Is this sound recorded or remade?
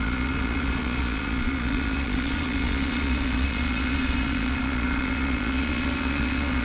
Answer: remade